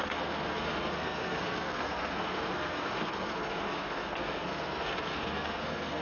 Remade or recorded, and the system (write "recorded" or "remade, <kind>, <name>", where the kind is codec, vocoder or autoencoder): remade, codec, SNAC